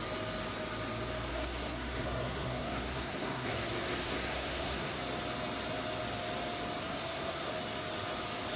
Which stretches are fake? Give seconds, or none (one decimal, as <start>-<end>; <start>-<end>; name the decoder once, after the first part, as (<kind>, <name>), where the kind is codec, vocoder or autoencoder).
1.3-5.0 (codec, SNAC); 6.8-7.5